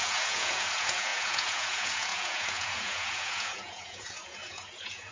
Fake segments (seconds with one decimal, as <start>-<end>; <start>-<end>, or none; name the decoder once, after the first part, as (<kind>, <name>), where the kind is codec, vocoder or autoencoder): 0.0-5.1 (vocoder, Vocos)